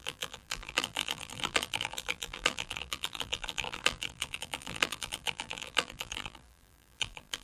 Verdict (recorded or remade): remade